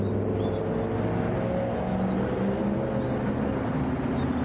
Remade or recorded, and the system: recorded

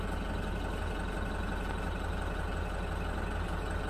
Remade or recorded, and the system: recorded